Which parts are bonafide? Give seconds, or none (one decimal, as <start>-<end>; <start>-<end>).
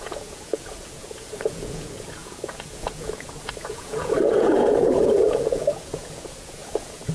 none